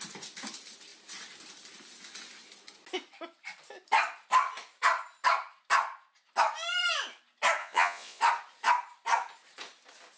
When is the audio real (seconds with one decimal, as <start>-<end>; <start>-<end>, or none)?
0.0-7.6; 8.2-10.2